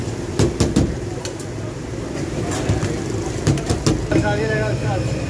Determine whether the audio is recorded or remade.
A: recorded